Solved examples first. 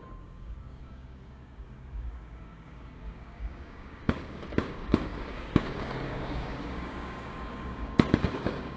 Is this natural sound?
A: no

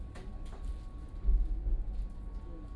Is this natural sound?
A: yes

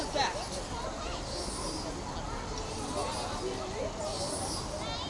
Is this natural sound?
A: yes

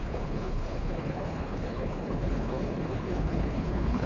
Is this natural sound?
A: no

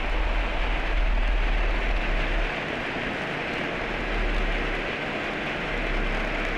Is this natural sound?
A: yes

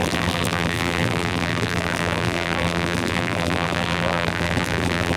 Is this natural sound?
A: no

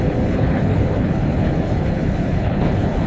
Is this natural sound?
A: no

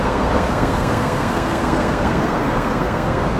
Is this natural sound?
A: no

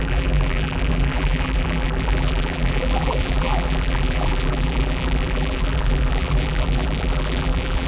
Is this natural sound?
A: no